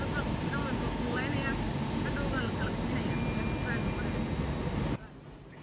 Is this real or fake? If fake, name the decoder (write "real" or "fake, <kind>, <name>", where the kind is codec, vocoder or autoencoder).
real